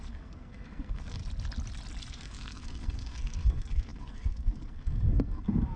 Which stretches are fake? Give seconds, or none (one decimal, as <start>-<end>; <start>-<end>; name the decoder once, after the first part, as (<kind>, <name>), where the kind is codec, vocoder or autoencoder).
0.0-1.2 (codec, SNAC); 2.1-5.8